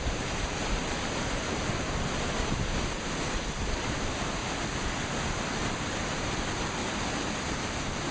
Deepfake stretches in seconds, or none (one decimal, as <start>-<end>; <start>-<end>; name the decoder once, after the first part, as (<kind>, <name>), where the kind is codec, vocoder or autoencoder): 0.0-4.4 (vocoder, BigVGAN v2); 5.5-6.8; 7.5-8.1